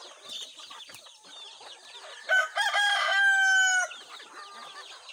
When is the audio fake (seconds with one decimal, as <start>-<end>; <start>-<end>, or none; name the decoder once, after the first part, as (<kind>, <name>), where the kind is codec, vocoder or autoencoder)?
none